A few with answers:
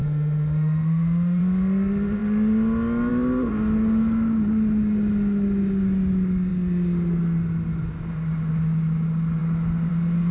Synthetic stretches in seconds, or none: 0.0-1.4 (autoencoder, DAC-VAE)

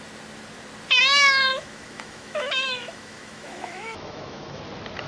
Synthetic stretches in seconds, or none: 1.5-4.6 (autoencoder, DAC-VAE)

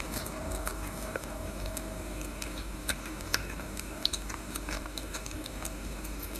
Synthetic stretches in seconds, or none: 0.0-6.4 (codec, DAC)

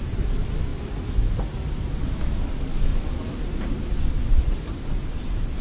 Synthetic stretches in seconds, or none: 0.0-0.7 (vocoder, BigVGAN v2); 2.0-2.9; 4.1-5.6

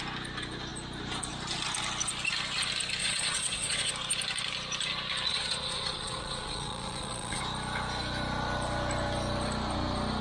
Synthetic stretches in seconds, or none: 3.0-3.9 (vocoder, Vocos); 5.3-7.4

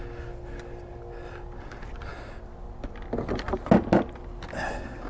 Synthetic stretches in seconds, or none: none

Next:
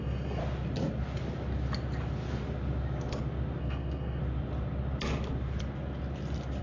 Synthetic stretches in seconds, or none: 0.0-0.4 (codec, SNAC); 3.6-4.2

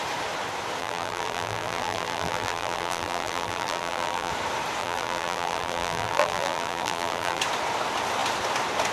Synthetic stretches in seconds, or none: 0.8-4.3 (vocoder, BigVGAN v2); 4.8-7.4